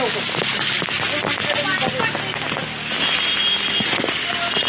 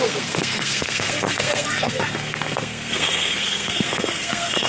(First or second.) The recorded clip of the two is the first